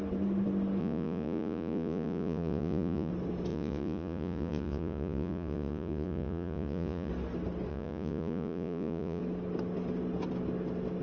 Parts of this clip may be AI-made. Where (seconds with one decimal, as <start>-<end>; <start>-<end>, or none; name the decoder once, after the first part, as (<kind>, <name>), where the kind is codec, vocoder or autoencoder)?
0.8-3.1 (vocoder, Vocos); 3.5-7.1; 7.7-9.2

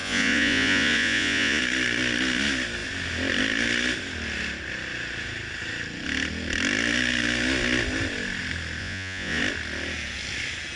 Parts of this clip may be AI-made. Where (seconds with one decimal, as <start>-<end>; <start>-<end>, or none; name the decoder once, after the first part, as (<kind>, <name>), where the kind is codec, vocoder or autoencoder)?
0.0-1.6 (vocoder, Vocos); 8.8-9.4

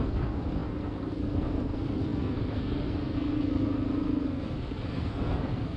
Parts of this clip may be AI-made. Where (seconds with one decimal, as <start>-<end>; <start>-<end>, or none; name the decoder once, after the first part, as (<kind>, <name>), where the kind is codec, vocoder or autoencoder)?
0.0-5.8 (codec, SNAC)

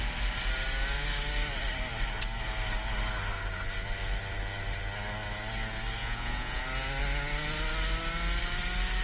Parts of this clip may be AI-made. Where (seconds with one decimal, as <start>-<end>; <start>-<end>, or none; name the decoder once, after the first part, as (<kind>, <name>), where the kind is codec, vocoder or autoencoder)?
6.0-6.6 (vocoder, Vocos)

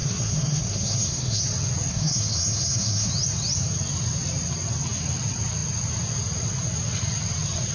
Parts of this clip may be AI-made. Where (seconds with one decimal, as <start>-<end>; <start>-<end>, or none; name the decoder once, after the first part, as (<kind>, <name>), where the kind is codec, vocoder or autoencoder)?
0.0-1.4 (codec, SNAC); 1.9-3.1